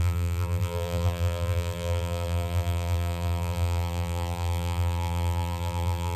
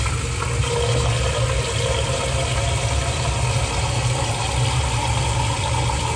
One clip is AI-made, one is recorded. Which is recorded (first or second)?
second